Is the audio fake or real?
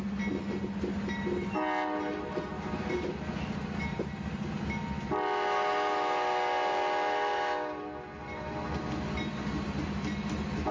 real